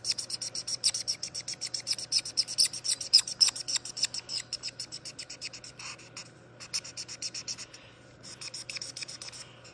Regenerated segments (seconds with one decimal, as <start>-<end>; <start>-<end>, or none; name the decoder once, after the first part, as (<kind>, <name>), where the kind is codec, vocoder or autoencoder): none